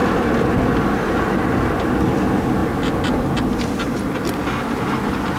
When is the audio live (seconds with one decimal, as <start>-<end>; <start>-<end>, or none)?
0.0-5.4